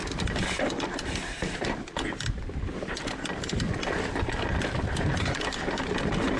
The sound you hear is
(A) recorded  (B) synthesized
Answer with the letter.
A